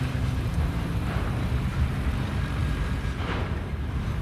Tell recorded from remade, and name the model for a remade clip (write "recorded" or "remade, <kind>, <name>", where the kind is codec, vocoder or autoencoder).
remade, vocoder, BigVGAN v2